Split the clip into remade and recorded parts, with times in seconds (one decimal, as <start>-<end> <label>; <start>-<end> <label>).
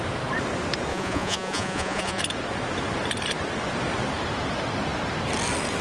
0.0-0.9 recorded; 0.9-2.2 remade; 2.2-5.8 recorded